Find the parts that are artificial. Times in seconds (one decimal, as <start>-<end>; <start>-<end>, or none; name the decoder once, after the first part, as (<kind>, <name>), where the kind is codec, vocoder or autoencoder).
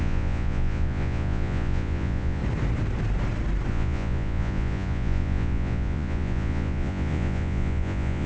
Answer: 0.0-2.4 (vocoder, Vocos); 3.7-8.3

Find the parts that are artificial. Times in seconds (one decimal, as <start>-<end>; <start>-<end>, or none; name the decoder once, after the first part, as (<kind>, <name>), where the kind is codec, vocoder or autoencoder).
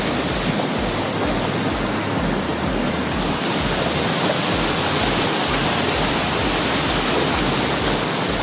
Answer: none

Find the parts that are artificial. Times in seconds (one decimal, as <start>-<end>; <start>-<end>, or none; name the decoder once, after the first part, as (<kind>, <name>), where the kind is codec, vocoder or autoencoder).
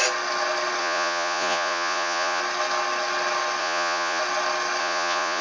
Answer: 0.8-2.4 (vocoder, Vocos); 3.6-4.2; 4.8-5.4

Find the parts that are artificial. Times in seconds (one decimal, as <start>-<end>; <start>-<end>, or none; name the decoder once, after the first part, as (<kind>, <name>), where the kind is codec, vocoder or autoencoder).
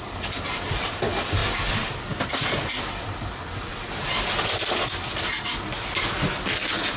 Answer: none